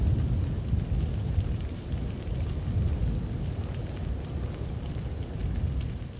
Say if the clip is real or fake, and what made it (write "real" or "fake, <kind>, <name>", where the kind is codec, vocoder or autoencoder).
real